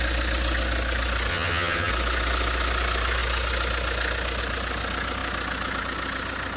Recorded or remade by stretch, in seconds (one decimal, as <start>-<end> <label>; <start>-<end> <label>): 0.0-1.3 recorded; 1.3-1.9 remade; 1.9-6.6 recorded